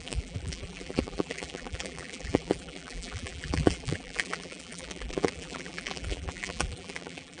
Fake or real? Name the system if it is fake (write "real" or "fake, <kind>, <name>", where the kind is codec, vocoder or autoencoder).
fake, vocoder, BigVGAN v2